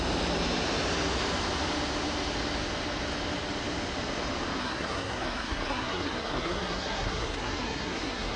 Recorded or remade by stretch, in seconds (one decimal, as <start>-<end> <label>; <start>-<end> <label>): 0.0-4.6 recorded; 4.6-8.4 remade